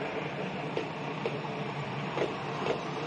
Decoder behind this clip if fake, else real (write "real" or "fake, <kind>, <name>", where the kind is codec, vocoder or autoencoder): real